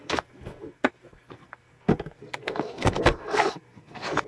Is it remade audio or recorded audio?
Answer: remade